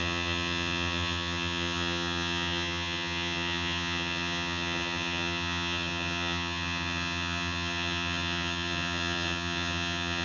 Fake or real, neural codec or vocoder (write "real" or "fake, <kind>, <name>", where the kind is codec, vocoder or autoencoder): fake, vocoder, HiFi-GAN